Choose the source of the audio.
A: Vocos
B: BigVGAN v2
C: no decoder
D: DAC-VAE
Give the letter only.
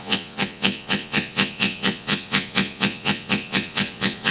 A